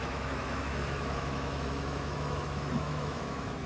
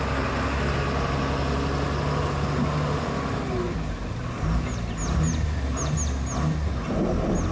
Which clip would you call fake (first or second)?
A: first